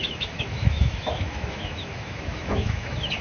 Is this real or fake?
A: fake